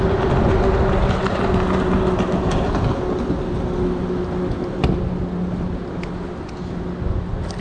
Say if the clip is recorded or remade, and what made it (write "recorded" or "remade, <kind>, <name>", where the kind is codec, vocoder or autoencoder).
recorded